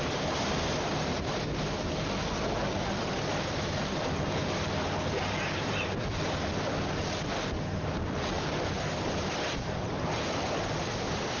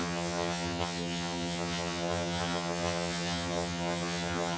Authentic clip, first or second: first